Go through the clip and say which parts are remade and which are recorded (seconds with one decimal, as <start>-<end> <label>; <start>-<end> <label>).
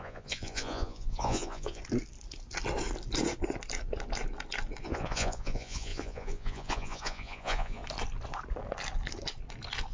0.0-1.8 remade; 1.8-4.8 recorded; 4.8-7.8 remade; 7.8-9.9 recorded